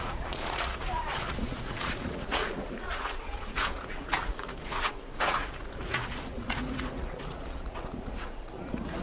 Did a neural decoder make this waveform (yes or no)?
yes